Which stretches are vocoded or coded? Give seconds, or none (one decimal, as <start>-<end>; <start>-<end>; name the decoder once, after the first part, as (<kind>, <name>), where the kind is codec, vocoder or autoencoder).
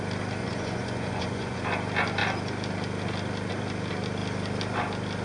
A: 0.4-1.6 (vocoder, Vocos)